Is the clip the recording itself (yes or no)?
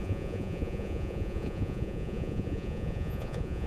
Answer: no